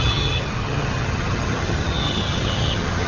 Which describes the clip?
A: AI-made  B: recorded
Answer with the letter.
A